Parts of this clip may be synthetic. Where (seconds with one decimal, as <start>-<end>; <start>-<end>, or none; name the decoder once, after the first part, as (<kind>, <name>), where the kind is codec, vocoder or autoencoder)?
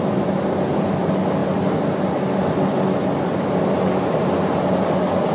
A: none